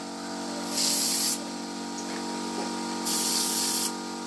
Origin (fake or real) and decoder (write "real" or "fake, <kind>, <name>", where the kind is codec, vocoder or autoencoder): real